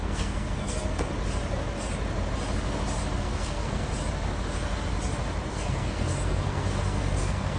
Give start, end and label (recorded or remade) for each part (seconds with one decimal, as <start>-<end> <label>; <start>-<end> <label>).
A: 0.0-1.1 remade; 1.1-3.2 recorded; 3.2-3.9 remade; 3.9-5.5 recorded; 5.5-7.6 remade

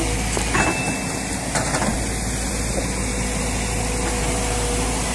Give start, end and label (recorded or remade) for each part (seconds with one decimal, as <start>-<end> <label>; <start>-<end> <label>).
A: 0.0-5.1 recorded